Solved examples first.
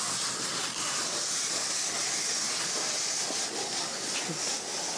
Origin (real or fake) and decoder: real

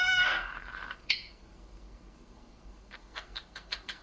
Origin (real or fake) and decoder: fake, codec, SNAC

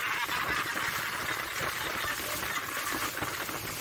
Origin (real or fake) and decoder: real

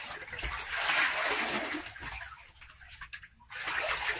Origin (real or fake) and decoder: real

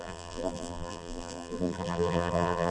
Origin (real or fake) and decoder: fake, vocoder, BigVGAN v2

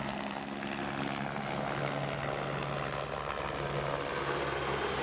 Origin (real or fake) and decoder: real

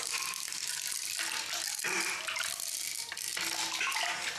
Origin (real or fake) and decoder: real